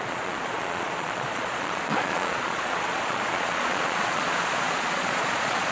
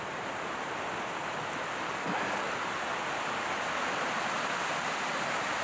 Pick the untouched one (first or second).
second